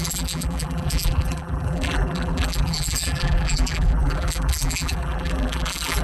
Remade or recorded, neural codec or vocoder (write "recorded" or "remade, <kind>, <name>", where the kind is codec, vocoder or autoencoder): remade, vocoder, BigVGAN v2